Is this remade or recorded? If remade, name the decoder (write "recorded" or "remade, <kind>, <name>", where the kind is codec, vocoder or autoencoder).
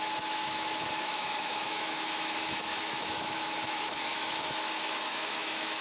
remade, autoencoder, DAC-VAE